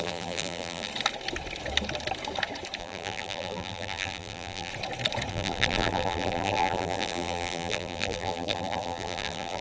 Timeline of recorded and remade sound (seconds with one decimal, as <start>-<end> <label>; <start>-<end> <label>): 0.0-0.9 remade; 0.9-2.8 recorded; 2.8-4.7 remade; 4.7-5.3 recorded; 5.3-9.6 remade